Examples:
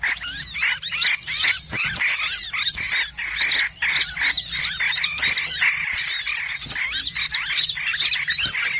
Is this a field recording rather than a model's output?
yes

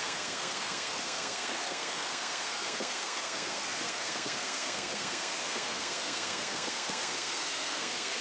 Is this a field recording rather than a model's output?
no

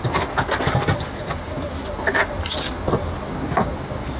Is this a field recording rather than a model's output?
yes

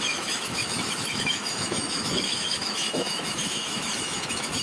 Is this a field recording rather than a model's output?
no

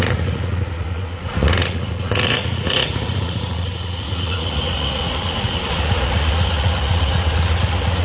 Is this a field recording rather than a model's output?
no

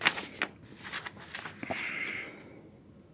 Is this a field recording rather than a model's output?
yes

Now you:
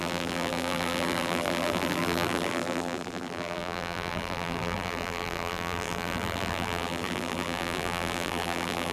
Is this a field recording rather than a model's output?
no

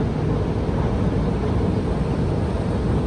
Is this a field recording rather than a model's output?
yes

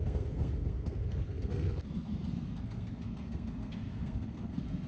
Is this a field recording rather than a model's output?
no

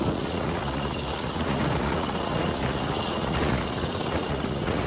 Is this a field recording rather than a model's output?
no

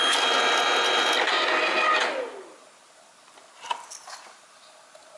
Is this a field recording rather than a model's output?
yes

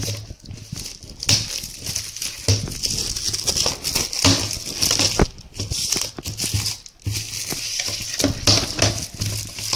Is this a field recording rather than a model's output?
yes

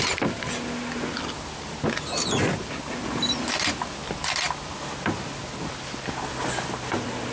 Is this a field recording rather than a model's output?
yes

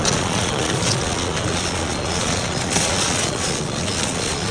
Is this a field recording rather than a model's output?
no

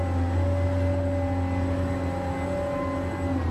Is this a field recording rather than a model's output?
yes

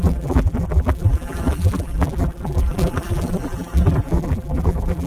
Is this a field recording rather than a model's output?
no